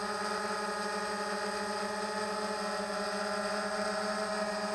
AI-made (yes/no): no